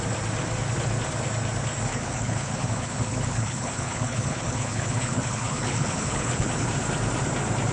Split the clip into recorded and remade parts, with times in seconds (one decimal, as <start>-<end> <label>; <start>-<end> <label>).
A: 0.0-1.9 recorded; 1.9-6.5 remade; 6.5-7.7 recorded